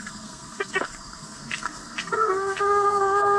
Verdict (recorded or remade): remade